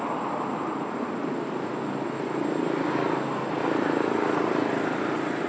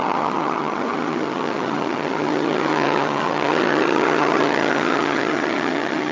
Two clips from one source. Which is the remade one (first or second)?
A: second